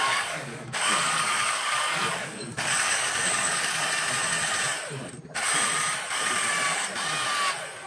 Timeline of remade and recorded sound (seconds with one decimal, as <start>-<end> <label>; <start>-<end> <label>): 0.0-3.8 remade; 3.8-7.9 recorded